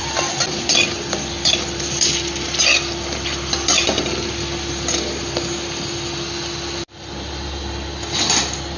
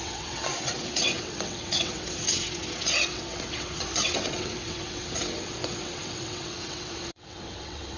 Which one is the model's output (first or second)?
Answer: second